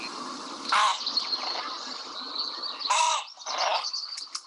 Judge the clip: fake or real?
real